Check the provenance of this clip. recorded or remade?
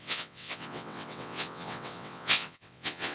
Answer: remade